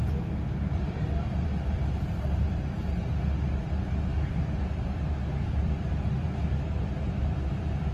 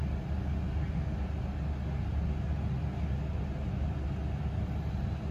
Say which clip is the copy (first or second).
first